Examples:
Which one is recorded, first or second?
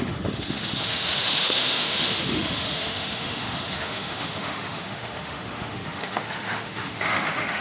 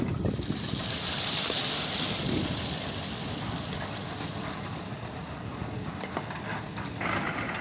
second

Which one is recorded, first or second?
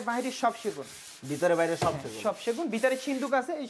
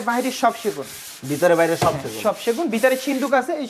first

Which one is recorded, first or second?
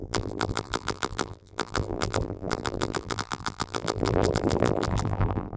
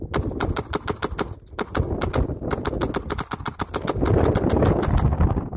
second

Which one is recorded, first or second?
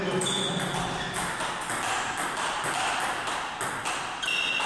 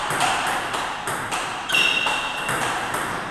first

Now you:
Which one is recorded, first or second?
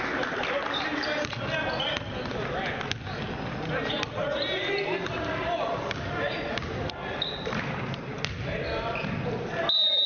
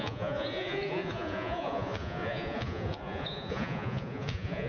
first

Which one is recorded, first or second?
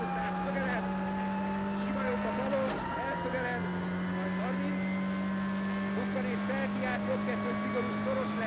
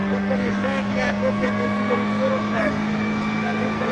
first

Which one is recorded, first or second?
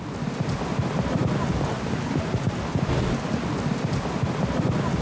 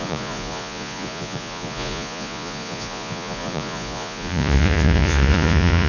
first